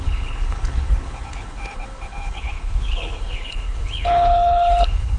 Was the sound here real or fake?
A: fake